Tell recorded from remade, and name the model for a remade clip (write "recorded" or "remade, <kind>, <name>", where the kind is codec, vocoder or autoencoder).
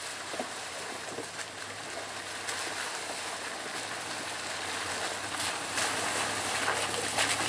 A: recorded